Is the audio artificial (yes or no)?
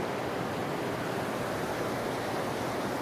no